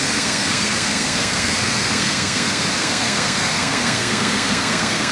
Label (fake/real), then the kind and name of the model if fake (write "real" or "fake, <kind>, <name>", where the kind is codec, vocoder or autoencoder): fake, codec, SNAC